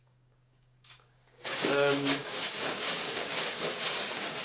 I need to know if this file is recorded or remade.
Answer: remade